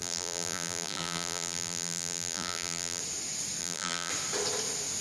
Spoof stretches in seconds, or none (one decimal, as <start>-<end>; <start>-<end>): 0.0-3.0; 3.6-4.1